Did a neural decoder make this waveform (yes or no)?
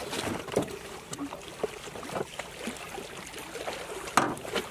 no